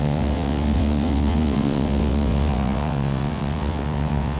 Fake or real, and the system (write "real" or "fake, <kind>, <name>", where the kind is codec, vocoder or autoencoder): fake, vocoder, WaveNeXt